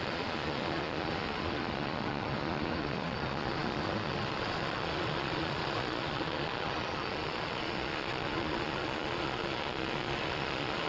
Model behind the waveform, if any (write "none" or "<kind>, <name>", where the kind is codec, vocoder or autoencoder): vocoder, Vocos